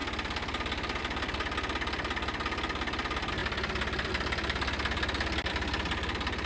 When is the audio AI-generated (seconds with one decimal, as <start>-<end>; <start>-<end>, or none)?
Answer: none